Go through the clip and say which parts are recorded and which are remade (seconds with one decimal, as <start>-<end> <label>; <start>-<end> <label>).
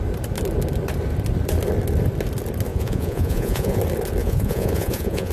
0.0-2.7 recorded; 2.7-3.8 remade; 3.8-4.2 recorded; 4.2-5.3 remade